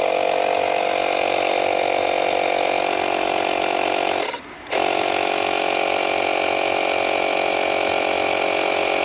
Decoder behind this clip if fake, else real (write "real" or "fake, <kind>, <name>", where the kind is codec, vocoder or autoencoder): real